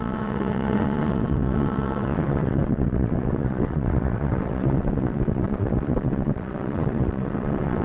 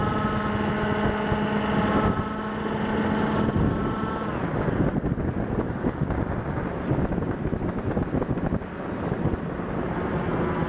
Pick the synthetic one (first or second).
first